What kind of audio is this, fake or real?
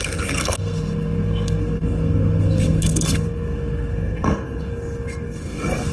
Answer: fake